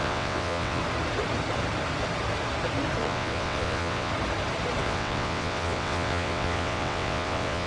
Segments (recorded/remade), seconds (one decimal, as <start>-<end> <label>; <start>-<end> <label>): 0.0-0.8 remade; 0.8-3.0 recorded; 3.0-4.1 remade; 4.1-4.8 recorded; 4.8-7.7 remade